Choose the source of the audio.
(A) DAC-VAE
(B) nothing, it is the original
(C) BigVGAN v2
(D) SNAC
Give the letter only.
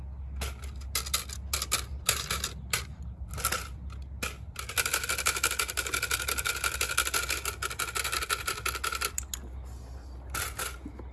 B